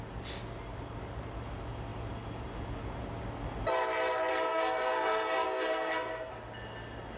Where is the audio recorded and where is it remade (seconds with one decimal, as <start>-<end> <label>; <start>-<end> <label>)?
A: 0.0-4.3 recorded; 4.3-6.3 remade; 6.3-7.2 recorded